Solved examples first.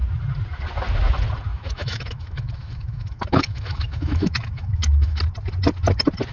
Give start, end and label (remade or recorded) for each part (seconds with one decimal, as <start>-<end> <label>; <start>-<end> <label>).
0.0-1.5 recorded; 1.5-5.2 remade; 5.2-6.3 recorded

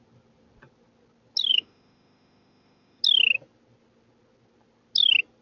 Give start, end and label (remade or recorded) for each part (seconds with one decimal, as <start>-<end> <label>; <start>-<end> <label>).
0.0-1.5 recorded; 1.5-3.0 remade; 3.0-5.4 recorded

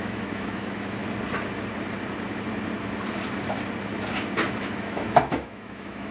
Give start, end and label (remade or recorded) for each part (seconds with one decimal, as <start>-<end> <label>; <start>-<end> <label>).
0.0-1.0 remade; 1.0-4.5 recorded; 4.5-6.1 remade

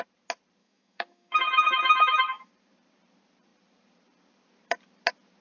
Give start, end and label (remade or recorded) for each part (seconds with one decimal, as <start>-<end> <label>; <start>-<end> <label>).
0.0-0.6 recorded; 0.6-2.5 remade; 2.5-5.4 recorded